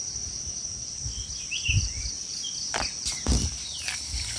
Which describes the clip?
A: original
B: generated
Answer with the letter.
A